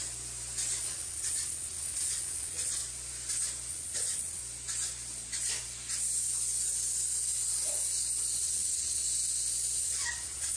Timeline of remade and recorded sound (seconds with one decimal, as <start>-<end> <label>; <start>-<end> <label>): 0.0-0.8 recorded; 0.8-2.8 remade; 2.8-3.7 recorded; 3.7-4.4 remade; 4.4-8.4 recorded; 8.4-9.0 remade; 9.0-9.8 recorded; 9.8-10.6 remade